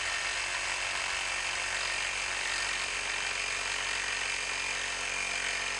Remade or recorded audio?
recorded